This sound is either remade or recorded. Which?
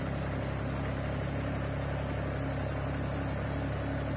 recorded